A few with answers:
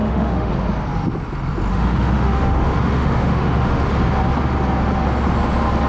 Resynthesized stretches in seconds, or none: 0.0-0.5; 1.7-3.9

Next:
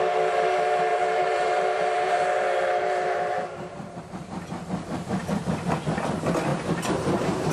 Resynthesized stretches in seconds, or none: 0.9-4.0; 6.5-7.5

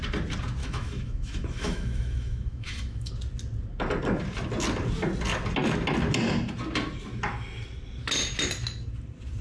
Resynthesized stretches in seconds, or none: 0.6-3.1

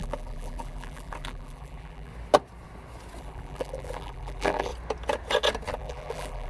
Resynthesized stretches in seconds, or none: 0.0-2.1; 3.2-4.7; 5.7-6.5

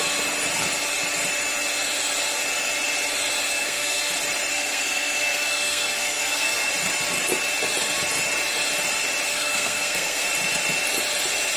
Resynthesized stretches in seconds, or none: 3.5-4.1; 4.5-6.7; 9.3-10.3

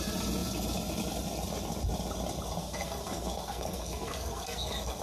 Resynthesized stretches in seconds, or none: 2.6-5.0

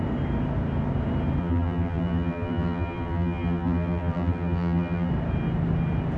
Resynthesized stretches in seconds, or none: 1.4-5.1